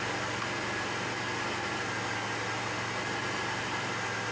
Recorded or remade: recorded